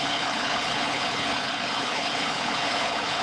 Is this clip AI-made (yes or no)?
yes